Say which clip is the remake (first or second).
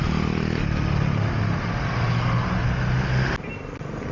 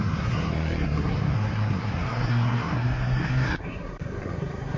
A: second